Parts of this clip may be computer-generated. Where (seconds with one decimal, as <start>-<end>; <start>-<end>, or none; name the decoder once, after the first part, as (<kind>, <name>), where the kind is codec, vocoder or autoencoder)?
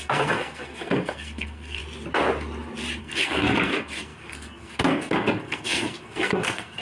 0.0-1.8 (codec, SNAC); 3.0-6.8